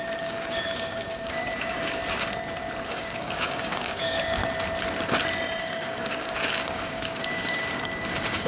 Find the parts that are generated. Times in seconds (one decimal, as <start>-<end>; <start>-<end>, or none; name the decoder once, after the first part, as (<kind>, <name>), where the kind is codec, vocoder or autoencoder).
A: 0.0-2.0 (codec, DAC); 2.9-4.4; 5.6-8.5